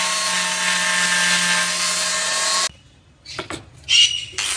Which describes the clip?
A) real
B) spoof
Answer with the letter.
A